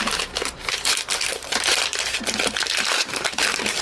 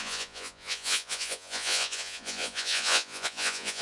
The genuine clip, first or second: first